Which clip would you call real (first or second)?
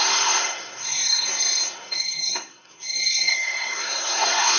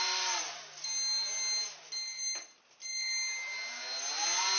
second